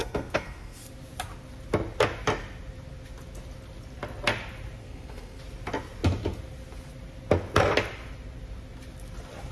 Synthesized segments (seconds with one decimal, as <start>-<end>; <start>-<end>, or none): 0.0-0.9; 4.8-5.4